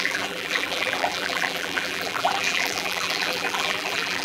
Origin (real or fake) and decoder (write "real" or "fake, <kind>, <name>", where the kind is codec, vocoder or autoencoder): fake, vocoder, BigVGAN v2